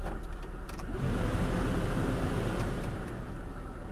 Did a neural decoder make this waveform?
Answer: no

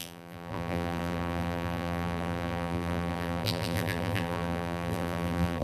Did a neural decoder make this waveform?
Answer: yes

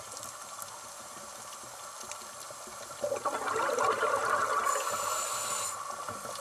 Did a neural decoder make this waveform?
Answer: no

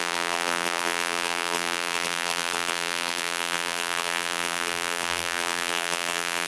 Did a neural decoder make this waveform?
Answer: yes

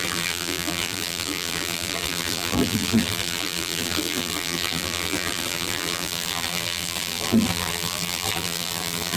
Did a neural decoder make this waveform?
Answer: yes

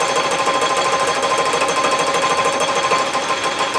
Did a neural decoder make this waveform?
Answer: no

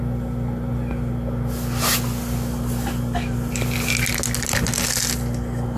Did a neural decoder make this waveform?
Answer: no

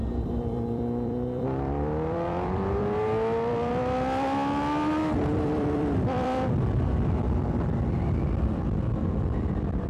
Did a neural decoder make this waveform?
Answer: yes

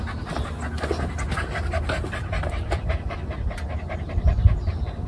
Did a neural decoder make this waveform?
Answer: yes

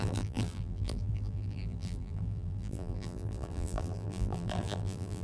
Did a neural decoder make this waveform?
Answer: yes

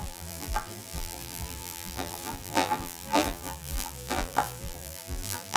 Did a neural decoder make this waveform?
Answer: yes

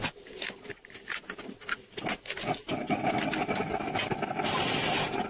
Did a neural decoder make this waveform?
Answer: no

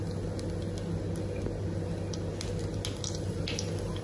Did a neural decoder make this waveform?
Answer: no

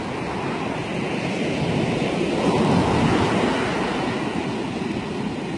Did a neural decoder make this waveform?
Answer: no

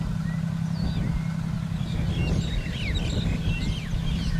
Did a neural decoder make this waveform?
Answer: no